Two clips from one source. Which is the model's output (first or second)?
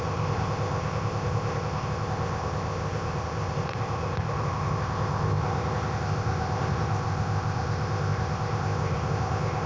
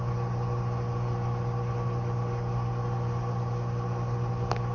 first